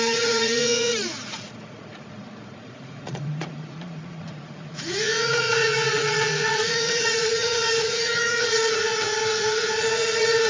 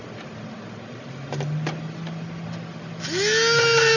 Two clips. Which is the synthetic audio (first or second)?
first